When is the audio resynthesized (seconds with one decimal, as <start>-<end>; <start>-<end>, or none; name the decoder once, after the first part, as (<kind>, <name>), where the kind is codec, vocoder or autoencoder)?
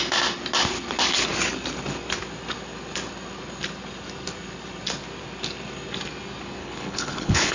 6.6-7.5 (codec, HILCodec)